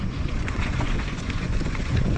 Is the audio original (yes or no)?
no